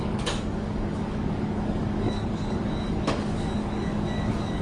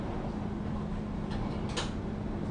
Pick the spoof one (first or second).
first